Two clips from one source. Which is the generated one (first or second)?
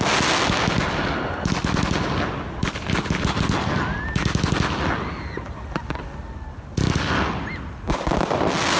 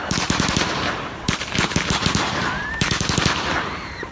second